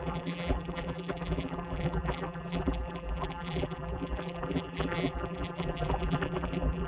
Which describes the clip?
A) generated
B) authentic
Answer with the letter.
A